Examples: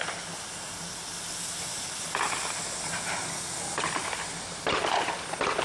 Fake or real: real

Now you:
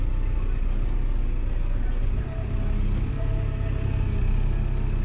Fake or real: real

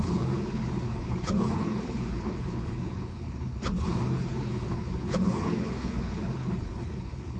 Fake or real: fake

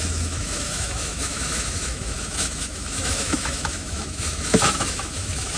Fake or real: fake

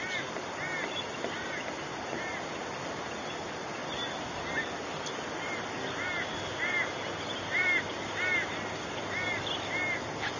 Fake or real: real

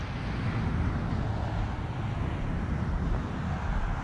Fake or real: real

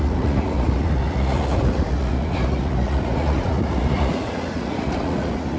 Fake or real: fake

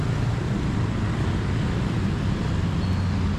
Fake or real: real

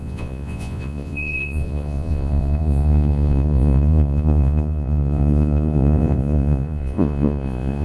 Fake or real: fake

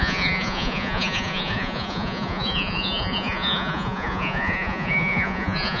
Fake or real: fake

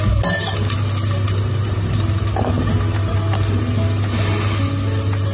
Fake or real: real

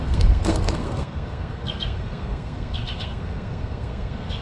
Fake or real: fake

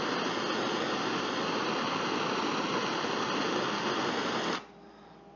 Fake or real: real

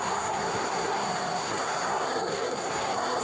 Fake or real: fake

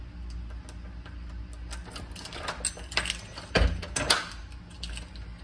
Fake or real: real